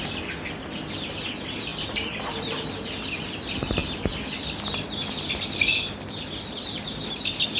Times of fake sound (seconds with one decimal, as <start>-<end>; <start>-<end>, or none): none